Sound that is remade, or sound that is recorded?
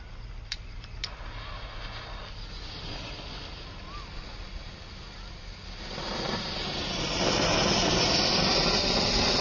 recorded